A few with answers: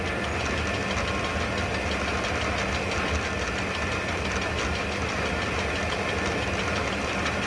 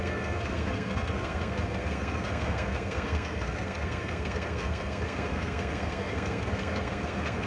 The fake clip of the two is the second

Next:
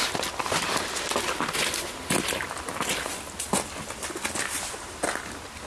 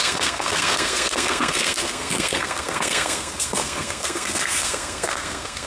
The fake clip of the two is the second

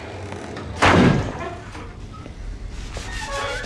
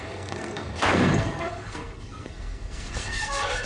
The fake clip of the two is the second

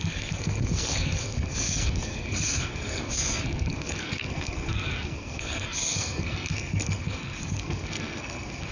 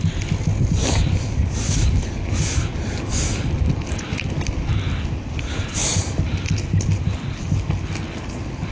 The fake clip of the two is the first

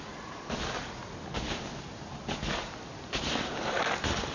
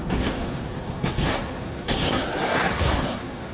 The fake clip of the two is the second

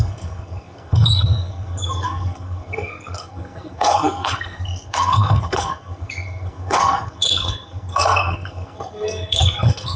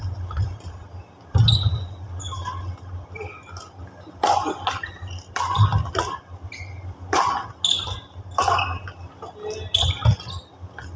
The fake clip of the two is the first